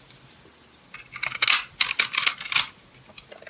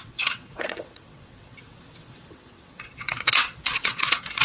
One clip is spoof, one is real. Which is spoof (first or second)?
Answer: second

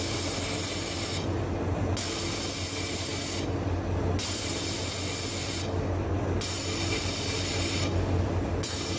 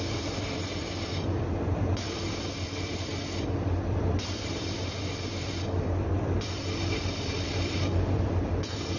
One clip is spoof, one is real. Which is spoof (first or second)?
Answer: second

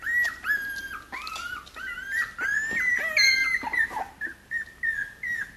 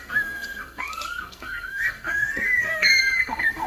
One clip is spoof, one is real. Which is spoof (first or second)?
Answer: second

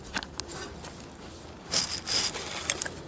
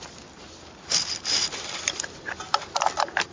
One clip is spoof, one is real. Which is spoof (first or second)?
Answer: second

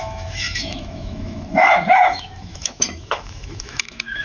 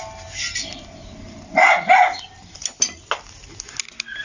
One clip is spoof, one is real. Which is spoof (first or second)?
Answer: first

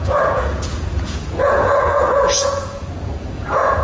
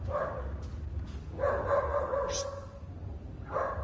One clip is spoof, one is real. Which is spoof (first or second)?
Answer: first